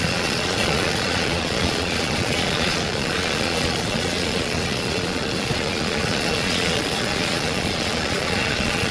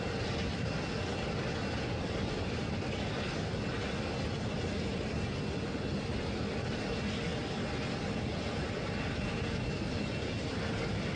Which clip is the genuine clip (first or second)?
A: second